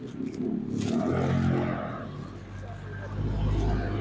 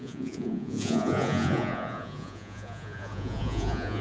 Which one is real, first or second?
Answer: first